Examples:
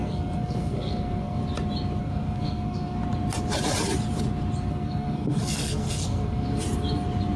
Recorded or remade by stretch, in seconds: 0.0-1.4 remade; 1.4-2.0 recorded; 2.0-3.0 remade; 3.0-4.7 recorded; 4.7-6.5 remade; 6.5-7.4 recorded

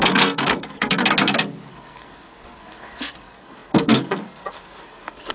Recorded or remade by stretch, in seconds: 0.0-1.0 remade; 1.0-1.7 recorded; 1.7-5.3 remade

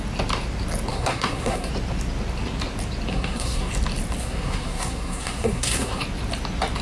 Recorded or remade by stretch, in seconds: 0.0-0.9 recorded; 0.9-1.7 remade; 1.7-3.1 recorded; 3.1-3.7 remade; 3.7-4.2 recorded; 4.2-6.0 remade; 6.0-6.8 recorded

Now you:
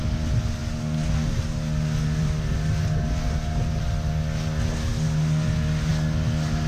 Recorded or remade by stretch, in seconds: 0.0-6.7 recorded

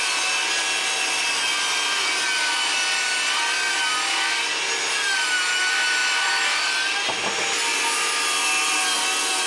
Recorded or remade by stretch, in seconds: 0.0-9.5 recorded

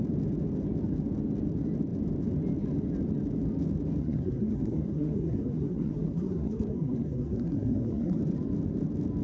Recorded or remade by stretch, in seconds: 0.0-4.0 recorded; 4.0-8.2 remade; 8.2-9.2 recorded